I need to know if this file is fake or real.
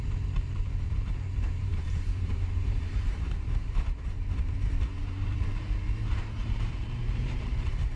fake